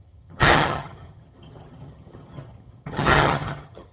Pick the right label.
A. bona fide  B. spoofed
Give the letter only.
B